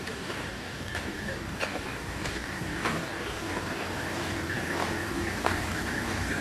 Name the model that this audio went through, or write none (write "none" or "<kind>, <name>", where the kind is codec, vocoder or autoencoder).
codec, DAC